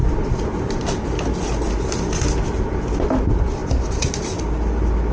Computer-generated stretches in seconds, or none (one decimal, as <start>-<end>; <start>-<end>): none